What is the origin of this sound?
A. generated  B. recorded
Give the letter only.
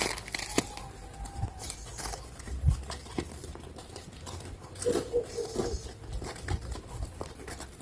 B